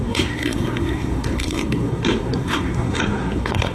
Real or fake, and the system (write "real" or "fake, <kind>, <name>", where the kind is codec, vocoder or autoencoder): fake, codec, SNAC